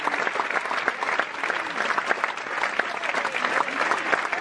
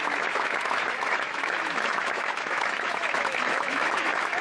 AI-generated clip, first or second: second